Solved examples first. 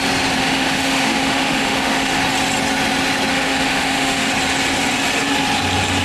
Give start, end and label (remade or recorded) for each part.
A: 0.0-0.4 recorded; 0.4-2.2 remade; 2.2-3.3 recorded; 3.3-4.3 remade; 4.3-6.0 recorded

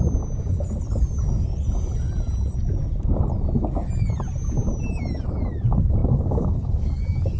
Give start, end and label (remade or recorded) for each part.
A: 0.0-6.0 recorded; 6.0-7.4 remade

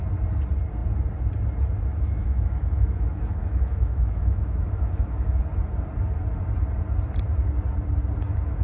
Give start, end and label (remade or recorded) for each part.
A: 0.0-1.9 recorded; 1.9-5.4 remade; 5.4-8.6 recorded

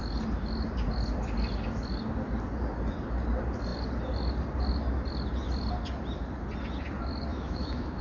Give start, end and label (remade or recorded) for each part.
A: 0.0-7.3 recorded; 7.3-8.0 remade